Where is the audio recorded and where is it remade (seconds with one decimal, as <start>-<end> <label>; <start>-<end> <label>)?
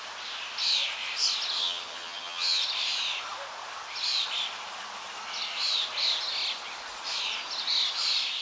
0.0-1.6 recorded; 1.6-2.6 remade; 2.6-8.4 recorded